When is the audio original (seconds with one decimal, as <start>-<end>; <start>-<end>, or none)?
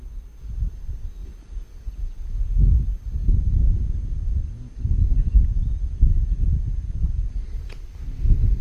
0.0-1.2; 2.8-8.6